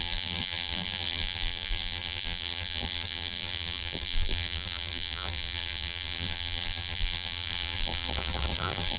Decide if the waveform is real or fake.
fake